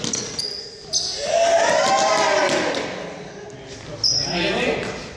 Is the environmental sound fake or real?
real